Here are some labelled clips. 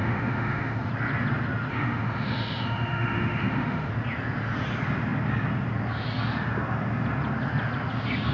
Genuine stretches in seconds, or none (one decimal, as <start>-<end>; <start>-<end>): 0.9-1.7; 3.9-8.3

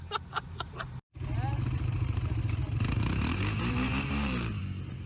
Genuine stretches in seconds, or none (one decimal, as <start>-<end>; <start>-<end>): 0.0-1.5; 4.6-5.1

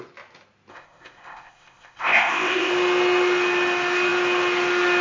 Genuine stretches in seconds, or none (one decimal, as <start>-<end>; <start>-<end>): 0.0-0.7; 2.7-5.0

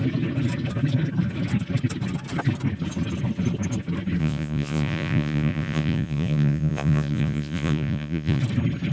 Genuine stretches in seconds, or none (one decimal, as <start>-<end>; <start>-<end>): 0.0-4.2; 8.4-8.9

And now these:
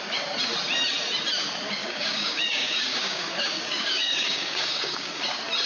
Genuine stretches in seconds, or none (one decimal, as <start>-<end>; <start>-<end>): 0.0-1.8; 5.2-5.7

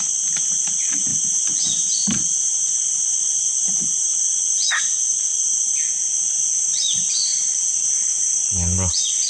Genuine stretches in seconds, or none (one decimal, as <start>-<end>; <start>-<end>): 0.0-1.1; 4.4-9.3